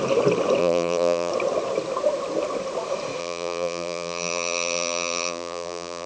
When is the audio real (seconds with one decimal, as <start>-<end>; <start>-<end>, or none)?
0.0-0.6; 1.3-3.2